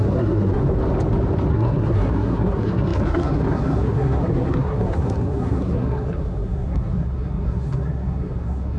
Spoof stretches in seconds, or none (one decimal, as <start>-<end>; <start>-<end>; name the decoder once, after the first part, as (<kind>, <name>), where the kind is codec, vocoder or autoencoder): 0.0-0.6 (codec, SNAC); 1.5-8.8